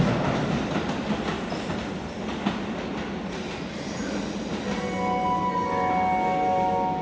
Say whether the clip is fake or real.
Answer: real